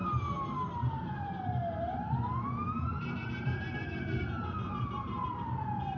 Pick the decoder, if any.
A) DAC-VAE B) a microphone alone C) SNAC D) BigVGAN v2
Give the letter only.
D